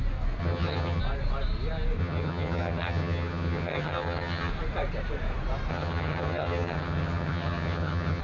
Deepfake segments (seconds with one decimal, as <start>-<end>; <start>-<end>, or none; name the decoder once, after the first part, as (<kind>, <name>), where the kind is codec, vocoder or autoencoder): 0.4-1.0 (vocoder, HiFi-GAN); 2.0-4.5; 5.7-8.2